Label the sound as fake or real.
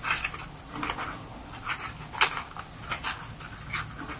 real